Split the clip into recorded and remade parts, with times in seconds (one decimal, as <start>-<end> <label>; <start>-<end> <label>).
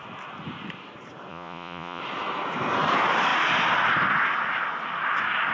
0.0-1.3 recorded; 1.3-2.0 remade; 2.0-5.5 recorded